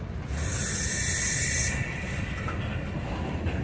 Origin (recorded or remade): recorded